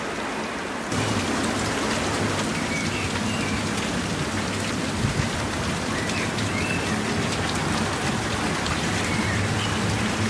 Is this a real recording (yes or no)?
yes